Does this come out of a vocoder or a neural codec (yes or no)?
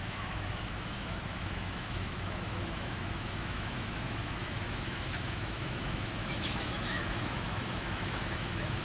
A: yes